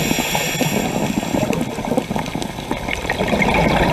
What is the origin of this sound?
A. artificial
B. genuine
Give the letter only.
B